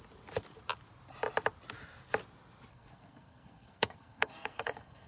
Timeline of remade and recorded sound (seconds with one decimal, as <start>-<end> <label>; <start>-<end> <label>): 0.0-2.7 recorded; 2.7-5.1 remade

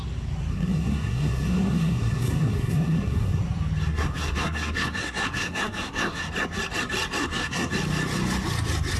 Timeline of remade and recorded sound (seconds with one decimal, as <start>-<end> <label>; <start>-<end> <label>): 0.0-0.5 recorded; 0.5-3.4 remade; 3.4-3.9 recorded; 3.9-6.3 remade; 6.3-7.2 recorded; 7.2-7.7 remade; 7.7-9.0 recorded

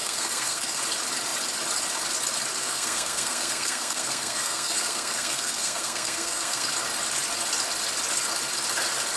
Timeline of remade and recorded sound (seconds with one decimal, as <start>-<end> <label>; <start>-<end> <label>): 0.0-0.8 remade; 0.8-2.6 recorded; 2.6-6.7 remade; 6.7-9.2 recorded